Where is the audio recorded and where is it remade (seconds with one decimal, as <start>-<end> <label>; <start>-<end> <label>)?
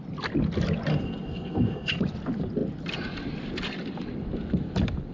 0.0-0.9 recorded; 0.9-2.0 remade; 2.0-5.1 recorded